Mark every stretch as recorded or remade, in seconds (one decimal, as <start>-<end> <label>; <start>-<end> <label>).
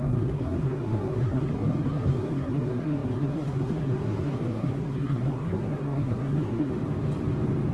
0.0-6.7 remade; 6.7-7.7 recorded